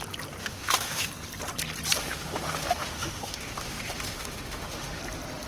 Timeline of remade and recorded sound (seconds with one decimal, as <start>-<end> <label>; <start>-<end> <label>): 0.0-0.4 recorded; 0.4-1.1 remade; 1.1-2.0 recorded; 2.0-5.0 remade; 5.0-5.5 recorded